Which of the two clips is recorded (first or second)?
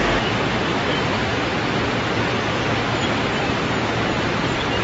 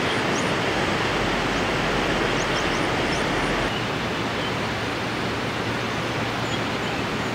second